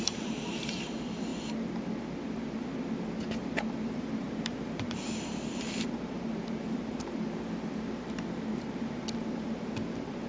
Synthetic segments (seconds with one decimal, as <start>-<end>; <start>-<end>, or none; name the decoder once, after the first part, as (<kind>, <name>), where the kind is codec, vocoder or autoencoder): 0.0-1.3 (vocoder, BigVGAN v2); 3.8-10.3